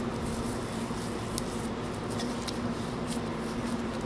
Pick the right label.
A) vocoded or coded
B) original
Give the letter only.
B